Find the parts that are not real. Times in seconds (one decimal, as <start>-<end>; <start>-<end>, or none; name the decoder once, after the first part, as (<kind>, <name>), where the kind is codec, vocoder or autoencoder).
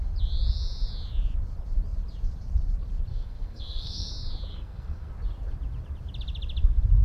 3.1-4.1 (codec, SNAC); 4.5-5.1